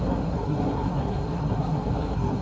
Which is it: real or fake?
fake